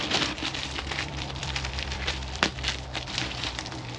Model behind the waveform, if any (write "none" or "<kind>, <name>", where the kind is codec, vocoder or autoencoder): vocoder, BigVGAN v2